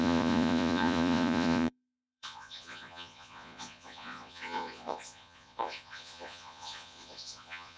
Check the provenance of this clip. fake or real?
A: fake